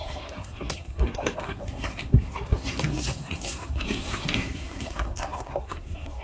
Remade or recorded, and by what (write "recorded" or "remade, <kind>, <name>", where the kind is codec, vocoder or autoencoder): remade, codec, SNAC